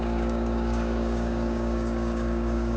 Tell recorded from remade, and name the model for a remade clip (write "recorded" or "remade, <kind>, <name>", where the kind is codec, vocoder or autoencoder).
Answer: remade, codec, DAC